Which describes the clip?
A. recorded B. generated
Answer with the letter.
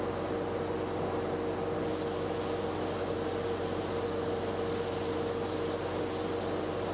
A